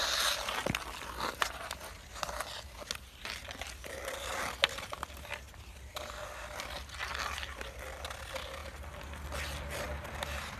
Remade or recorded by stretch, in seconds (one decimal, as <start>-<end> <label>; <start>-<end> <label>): 0.0-10.6 recorded